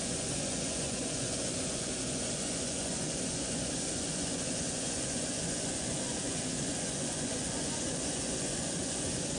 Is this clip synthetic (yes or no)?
yes